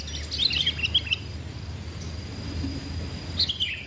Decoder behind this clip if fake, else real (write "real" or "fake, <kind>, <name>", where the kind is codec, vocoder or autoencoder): real